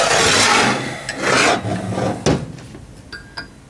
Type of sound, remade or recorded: recorded